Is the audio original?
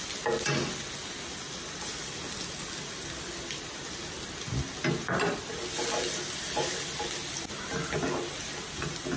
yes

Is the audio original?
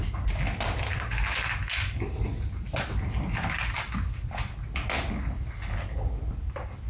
yes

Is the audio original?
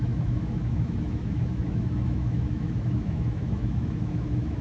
no